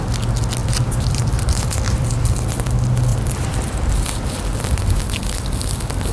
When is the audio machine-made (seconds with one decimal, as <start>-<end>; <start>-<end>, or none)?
0.6-2.1; 3.1-4.8